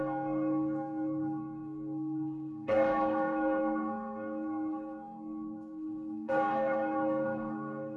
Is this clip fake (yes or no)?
yes